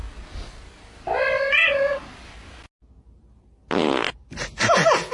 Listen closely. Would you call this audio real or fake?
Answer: real